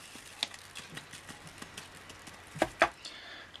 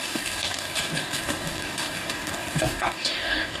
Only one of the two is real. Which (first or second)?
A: first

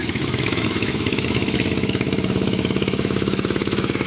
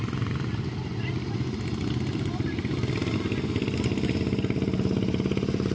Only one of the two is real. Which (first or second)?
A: second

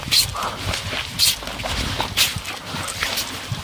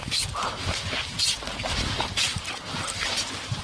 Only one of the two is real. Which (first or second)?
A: first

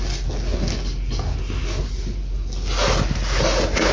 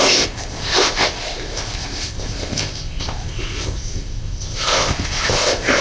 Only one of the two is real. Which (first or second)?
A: first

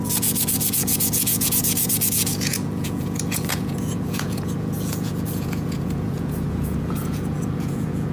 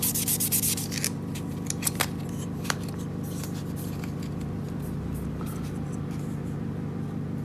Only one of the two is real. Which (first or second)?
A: second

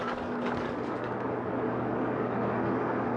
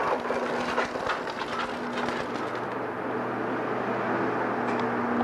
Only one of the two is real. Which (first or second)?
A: second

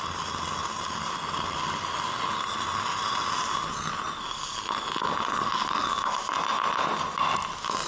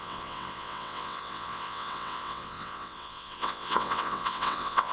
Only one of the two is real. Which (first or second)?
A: first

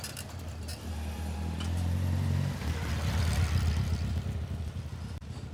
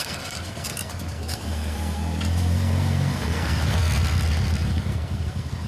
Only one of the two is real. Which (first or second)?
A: first